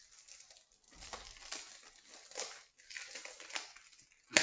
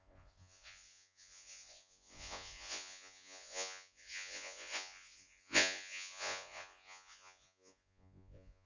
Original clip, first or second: first